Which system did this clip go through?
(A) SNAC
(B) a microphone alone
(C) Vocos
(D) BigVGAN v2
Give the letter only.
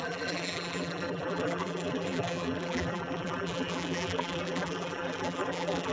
D